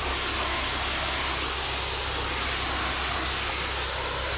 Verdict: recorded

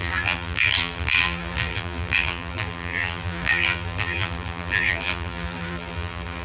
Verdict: remade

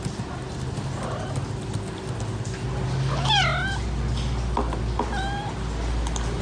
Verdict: recorded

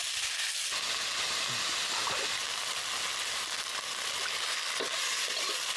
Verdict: recorded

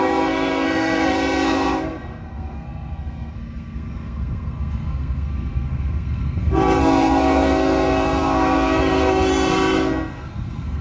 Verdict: remade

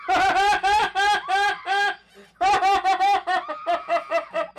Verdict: recorded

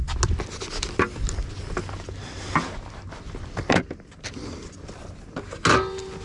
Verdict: recorded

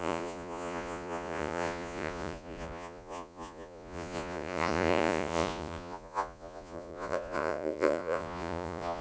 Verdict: remade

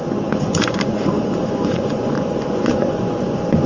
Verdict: remade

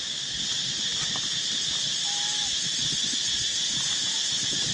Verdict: recorded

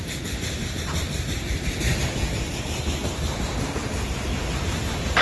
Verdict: remade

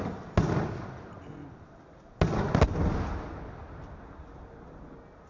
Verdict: recorded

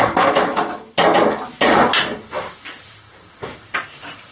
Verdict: recorded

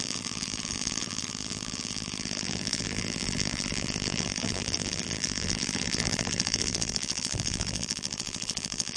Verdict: remade